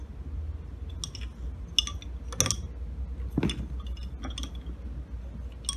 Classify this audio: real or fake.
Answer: real